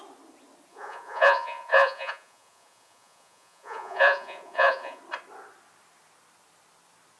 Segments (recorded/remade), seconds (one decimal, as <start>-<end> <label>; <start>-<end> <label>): 0.0-0.7 recorded; 0.7-5.0 remade; 5.0-7.2 recorded